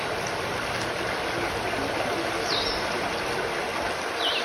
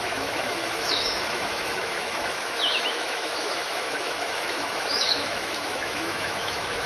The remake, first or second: second